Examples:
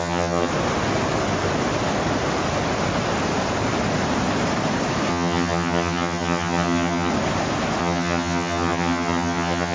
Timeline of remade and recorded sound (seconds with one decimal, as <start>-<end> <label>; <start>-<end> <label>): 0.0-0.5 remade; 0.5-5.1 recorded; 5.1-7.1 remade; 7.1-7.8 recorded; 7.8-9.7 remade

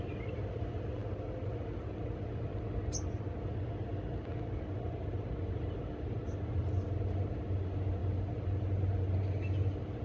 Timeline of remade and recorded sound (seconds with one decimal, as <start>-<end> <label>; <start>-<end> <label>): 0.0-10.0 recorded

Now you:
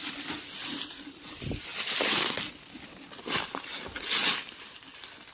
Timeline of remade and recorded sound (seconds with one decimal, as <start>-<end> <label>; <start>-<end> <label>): 0.0-5.3 recorded

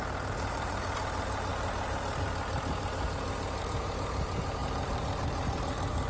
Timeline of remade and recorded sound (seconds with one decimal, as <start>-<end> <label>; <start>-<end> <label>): 0.0-1.5 remade; 1.5-3.6 recorded; 3.6-6.1 remade

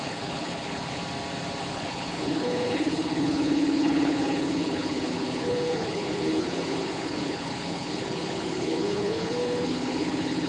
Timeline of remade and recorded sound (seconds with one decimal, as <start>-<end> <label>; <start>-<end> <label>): 0.0-1.0 remade; 1.0-1.6 recorded; 1.6-10.5 remade

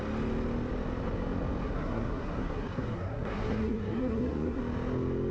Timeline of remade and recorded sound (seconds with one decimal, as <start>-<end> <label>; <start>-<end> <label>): 0.0-1.6 recorded; 1.6-4.6 remade; 4.6-5.3 recorded

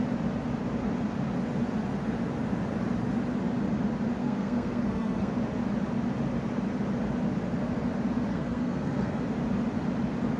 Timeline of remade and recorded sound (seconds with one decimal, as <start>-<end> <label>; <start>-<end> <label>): 0.0-4.2 recorded; 4.2-5.3 remade; 5.3-8.3 recorded; 8.3-9.2 remade; 9.2-10.4 recorded